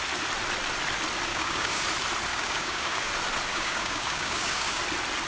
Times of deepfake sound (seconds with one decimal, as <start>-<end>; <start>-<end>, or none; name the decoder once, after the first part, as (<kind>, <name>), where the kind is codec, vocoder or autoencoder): 1.3-1.8 (codec, DAC); 2.3-3.1; 3.5-4.8